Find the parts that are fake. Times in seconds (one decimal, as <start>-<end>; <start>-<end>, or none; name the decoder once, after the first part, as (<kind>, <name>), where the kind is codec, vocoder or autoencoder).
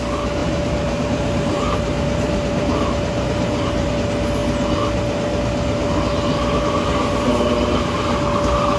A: 0.4-3.9 (vocoder, BigVGAN v2)